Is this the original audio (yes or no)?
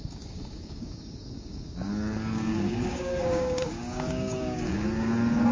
no